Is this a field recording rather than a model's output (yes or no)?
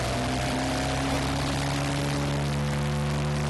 yes